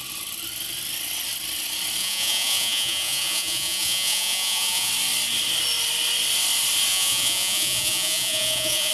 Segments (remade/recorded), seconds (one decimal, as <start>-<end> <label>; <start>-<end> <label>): 0.0-2.0 recorded; 2.0-4.9 remade; 4.9-6.9 recorded; 6.9-8.9 remade